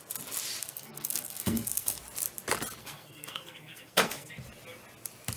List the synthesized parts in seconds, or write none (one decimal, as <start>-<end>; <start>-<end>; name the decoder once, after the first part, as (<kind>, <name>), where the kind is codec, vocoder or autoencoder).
0.6-2.0 (codec, SNAC); 2.8-4.3